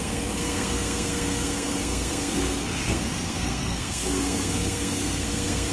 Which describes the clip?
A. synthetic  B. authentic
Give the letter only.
A